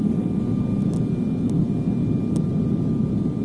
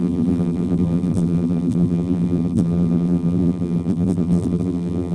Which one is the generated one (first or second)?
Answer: second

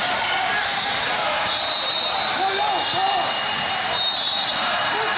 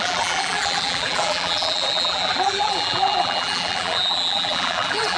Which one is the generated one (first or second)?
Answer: second